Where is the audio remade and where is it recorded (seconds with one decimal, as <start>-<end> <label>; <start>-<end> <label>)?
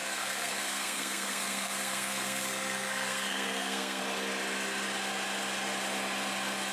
0.0-4.0 remade; 4.0-6.7 recorded